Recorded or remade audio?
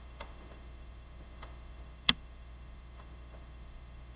remade